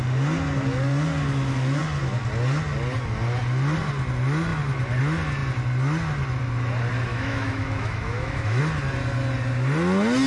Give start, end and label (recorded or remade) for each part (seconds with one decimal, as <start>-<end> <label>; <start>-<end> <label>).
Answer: 0.0-7.1 recorded; 7.1-8.6 remade; 8.6-10.3 recorded